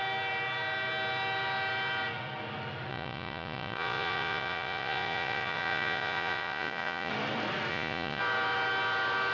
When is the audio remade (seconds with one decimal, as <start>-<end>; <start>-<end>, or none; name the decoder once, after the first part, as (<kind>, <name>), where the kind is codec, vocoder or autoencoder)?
2.9-7.1 (vocoder, Vocos); 7.7-8.2